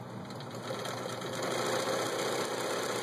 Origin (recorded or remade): recorded